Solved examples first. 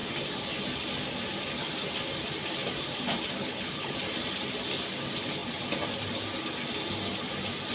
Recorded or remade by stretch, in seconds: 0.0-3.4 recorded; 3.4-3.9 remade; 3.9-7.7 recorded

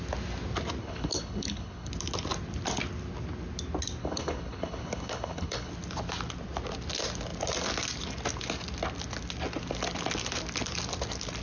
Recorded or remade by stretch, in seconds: 0.0-0.8 recorded; 0.8-1.9 remade; 1.9-4.0 recorded; 4.0-5.7 remade; 5.7-11.4 recorded